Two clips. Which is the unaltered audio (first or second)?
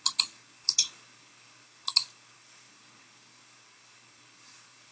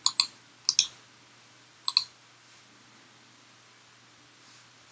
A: second